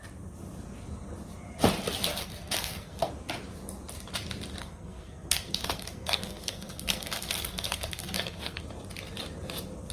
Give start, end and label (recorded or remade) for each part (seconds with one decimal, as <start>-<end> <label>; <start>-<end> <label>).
0.0-2.1 recorded; 2.1-3.1 remade; 3.1-4.6 recorded; 4.6-8.6 remade; 8.6-9.9 recorded